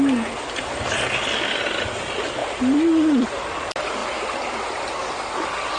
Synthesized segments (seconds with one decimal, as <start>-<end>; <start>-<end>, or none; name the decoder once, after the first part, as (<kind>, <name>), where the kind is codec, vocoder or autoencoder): 2.4-3.4 (vocoder, BigVGAN v2)